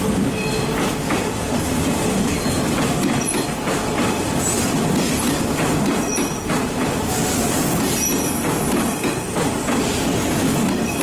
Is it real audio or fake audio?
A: real